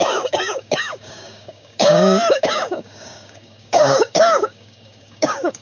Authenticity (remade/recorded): remade